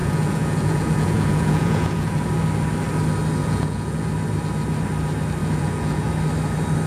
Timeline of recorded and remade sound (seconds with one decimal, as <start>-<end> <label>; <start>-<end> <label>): 0.0-2.1 remade; 2.1-3.4 recorded; 3.4-4.1 remade; 4.1-5.4 recorded; 5.4-6.1 remade; 6.1-6.9 recorded